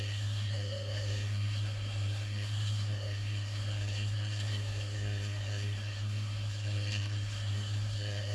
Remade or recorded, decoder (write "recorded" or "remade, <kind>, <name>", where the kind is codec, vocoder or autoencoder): remade, codec, SNAC